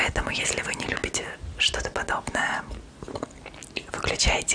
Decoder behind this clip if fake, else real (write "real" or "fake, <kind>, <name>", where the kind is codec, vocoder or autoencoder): real